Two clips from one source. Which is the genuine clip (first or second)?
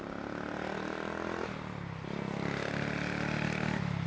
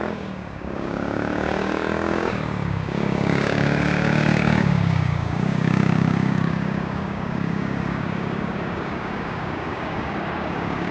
first